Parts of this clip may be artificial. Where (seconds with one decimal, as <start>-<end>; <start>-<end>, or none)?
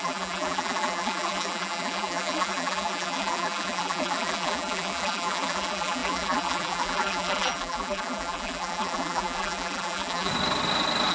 0.0-10.3